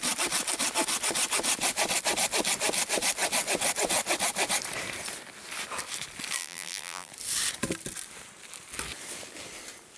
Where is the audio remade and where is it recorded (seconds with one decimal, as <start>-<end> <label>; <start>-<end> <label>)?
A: 0.0-6.4 recorded; 6.4-7.1 remade; 7.1-10.0 recorded